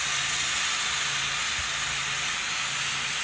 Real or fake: real